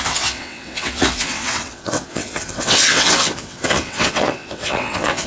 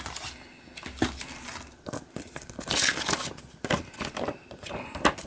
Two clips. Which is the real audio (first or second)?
second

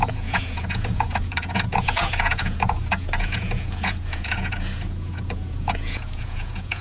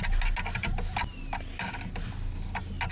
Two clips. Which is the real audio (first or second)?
second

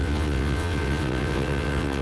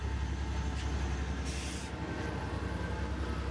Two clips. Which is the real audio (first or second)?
second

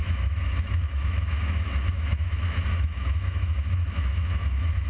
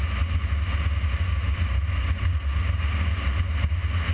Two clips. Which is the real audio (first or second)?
second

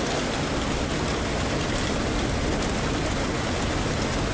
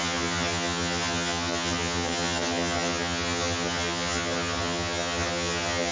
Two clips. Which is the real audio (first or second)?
first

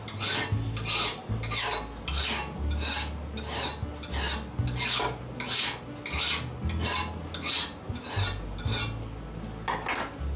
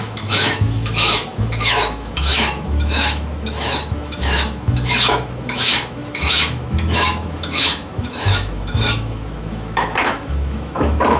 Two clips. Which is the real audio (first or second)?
first